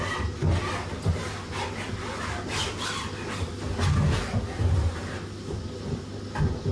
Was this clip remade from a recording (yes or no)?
no